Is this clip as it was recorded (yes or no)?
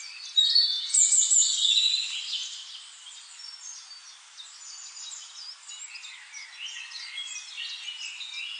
yes